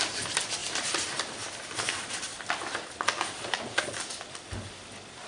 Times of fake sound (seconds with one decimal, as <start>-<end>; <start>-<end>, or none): none